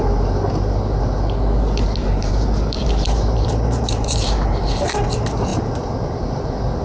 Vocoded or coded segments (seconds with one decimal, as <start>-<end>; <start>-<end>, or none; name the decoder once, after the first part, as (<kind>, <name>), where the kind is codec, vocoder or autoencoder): 2.0-4.9 (vocoder, BigVGAN v2)